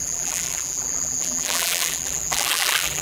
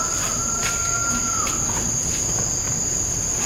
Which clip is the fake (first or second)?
first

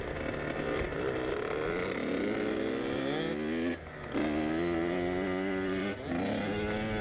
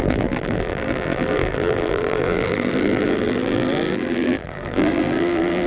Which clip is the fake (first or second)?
second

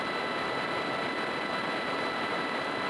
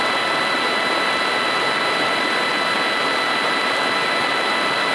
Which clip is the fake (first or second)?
first